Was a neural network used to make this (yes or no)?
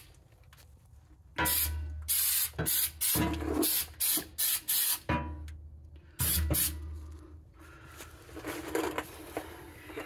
no